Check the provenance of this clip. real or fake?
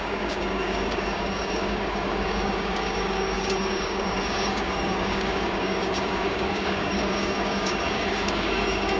fake